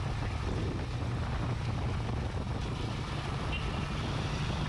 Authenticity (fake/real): real